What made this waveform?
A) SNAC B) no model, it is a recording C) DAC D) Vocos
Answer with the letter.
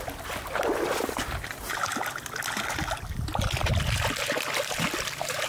B